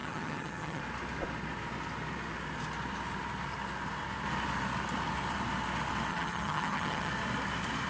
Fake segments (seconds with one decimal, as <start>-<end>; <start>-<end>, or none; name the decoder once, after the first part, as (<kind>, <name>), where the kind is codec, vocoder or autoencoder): 0.0-0.8 (vocoder, HiFi-GAN); 6.1-7.1